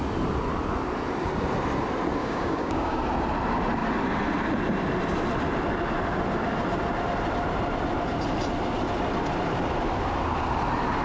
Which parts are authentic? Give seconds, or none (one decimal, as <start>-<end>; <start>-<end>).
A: 0.0-2.2; 3.0-11.0